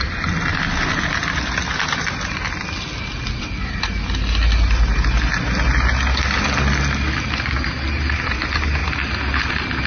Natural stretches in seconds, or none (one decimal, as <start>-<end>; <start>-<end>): 0.0-9.9